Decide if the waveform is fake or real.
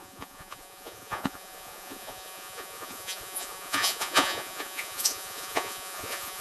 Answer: fake